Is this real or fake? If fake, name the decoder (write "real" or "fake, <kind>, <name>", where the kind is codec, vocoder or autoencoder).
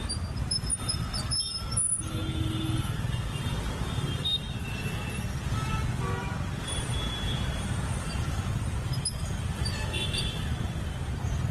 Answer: real